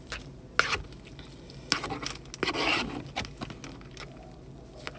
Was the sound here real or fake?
real